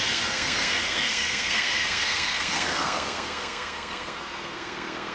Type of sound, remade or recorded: remade